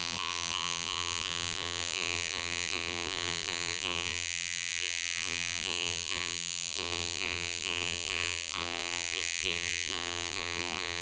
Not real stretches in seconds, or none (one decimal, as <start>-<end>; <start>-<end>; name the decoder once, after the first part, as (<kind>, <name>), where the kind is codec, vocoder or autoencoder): 0.0-11.0 (vocoder, BigVGAN v2)